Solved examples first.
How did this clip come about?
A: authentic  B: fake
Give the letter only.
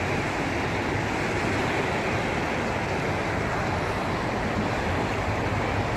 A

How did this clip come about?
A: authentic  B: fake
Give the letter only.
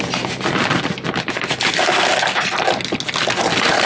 A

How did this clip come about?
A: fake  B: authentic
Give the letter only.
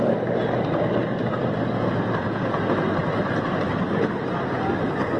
B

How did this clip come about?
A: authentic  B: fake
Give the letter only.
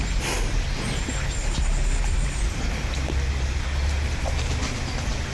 A